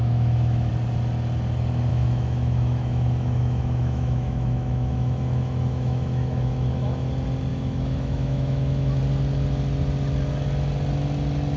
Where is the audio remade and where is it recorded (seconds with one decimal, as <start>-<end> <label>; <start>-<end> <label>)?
0.0-0.7 remade; 0.7-1.9 recorded; 1.9-7.1 remade; 7.1-7.5 recorded; 7.5-9.0 remade; 9.0-11.6 recorded